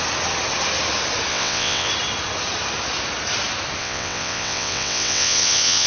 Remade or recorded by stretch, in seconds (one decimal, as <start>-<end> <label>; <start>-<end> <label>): 0.0-1.3 recorded; 1.3-1.9 remade; 1.9-3.8 recorded; 3.8-5.9 remade